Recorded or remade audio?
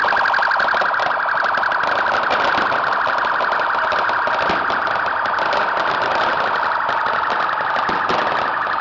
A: recorded